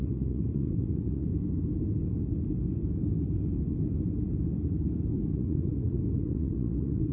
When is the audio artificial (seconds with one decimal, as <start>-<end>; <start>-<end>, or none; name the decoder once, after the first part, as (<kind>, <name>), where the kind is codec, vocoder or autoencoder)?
0.0-1.3 (vocoder, Vocos); 5.3-7.1